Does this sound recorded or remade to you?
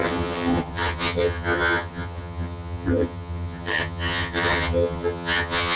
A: remade